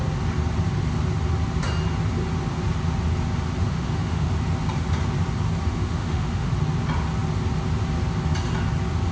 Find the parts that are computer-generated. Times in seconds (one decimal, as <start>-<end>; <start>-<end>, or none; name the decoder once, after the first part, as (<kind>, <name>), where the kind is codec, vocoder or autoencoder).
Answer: 3.7-4.3 (autoencoder, DAC-VAE); 5.7-6.5